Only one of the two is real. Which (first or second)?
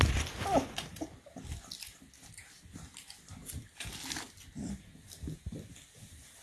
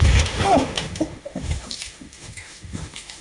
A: first